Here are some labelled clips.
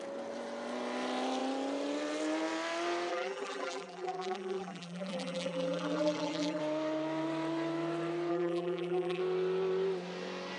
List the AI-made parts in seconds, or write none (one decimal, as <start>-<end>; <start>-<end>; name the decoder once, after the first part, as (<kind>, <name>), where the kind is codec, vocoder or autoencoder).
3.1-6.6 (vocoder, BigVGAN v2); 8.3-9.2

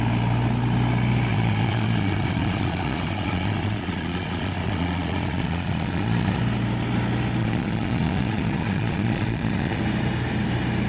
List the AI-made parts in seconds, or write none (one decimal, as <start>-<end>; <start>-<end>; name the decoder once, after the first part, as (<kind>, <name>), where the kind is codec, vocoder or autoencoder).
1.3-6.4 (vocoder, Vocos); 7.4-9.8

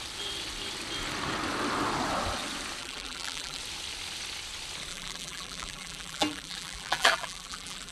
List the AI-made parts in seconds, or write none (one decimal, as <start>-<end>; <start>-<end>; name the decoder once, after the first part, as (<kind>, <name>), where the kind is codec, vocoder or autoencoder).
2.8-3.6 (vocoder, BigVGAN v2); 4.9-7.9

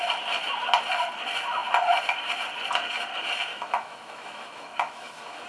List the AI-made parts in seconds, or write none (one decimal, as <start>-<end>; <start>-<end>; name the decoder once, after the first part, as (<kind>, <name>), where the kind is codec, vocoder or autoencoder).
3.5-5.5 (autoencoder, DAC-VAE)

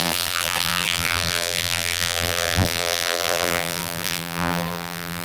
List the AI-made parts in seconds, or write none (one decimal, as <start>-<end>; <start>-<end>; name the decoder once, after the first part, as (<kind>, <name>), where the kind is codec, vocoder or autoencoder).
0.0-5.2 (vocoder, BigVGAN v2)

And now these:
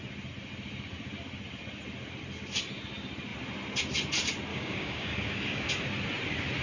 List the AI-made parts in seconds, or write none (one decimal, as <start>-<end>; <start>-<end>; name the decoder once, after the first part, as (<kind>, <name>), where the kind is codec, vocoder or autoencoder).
4.5-5.7 (codec, DAC)

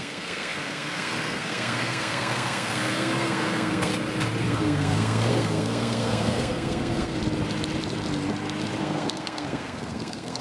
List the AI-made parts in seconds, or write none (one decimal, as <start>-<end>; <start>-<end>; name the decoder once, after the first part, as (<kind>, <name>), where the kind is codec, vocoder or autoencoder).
0.0-3.9 (codec, SNAC); 4.4-7.2; 8.8-10.4